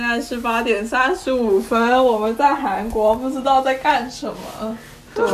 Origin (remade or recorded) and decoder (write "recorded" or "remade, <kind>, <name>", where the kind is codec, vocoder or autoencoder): recorded